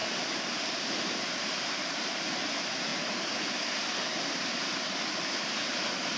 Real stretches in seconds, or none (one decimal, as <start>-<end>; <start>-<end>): 2.3-6.2